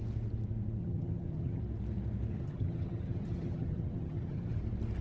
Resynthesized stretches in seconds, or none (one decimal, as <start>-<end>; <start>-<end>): 0.8-1.6; 2.3-4.6